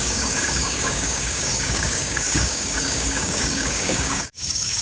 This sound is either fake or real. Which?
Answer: fake